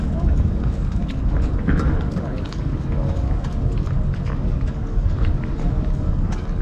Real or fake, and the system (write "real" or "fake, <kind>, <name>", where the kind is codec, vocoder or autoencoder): fake, codec, DAC